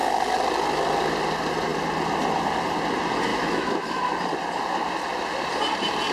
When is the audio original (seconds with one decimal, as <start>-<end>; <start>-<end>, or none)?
0.0-3.3; 4.0-6.1